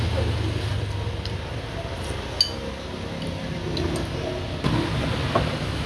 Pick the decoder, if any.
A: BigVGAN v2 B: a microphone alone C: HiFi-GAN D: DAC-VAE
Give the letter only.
B